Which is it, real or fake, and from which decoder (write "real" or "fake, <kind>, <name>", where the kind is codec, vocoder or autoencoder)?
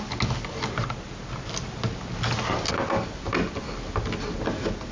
real